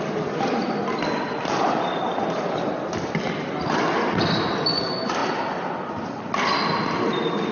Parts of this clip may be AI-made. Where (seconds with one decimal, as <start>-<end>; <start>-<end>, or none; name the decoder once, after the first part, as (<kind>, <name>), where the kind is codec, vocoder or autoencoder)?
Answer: none